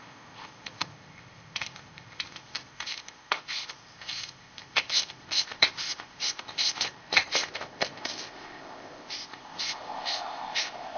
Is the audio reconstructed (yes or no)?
yes